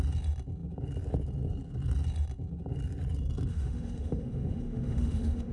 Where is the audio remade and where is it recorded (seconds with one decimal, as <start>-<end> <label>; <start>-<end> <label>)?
0.0-3.5 recorded; 3.5-5.5 remade